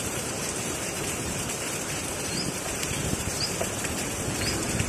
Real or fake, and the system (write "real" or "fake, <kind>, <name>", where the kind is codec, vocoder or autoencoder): fake, vocoder, BigVGAN v2